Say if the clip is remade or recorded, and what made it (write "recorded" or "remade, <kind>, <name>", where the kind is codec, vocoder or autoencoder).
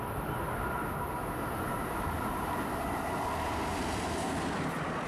recorded